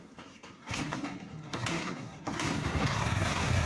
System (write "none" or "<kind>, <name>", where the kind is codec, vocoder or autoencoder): codec, SNAC